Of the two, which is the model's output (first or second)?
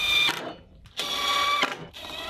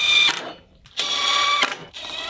second